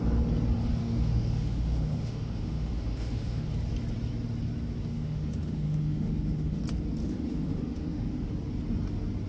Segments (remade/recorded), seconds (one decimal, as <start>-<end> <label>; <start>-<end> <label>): 0.0-0.8 recorded; 0.8-3.5 remade; 3.5-4.9 recorded; 4.9-6.6 remade; 6.6-7.0 recorded; 7.0-8.3 remade; 8.3-9.3 recorded